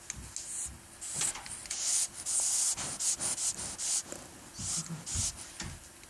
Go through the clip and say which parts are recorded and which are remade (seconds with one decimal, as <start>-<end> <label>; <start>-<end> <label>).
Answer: 0.0-6.1 recorded